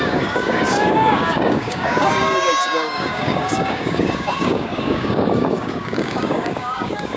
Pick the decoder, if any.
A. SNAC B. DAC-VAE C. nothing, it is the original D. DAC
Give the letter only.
D